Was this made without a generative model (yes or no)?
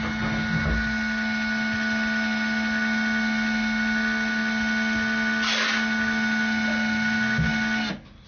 yes